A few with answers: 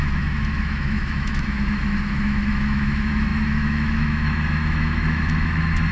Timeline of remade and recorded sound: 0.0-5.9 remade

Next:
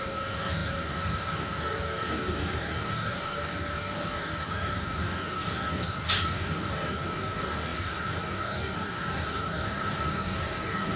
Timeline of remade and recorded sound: 0.0-11.0 remade

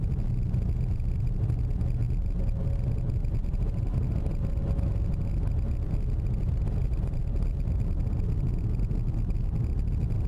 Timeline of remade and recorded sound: 0.0-3.4 recorded; 3.4-4.0 remade; 4.0-6.4 recorded; 6.4-7.2 remade; 7.2-10.3 recorded

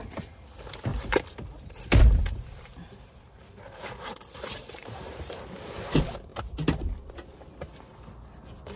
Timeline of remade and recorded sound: 0.0-0.9 recorded; 0.9-5.4 remade; 5.4-8.8 recorded

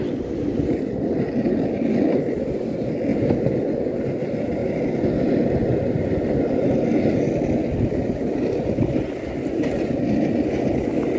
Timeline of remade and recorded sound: 0.0-3.1 recorded; 3.1-3.7 remade; 3.7-4.6 recorded; 4.6-6.1 remade; 6.1-11.2 recorded